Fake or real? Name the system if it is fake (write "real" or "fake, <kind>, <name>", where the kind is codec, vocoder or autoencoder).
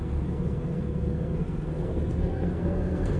fake, codec, SNAC